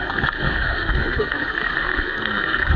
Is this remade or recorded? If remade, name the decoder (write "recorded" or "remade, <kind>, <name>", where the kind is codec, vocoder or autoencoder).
remade, codec, SNAC